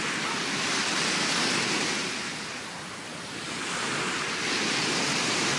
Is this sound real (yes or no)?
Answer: yes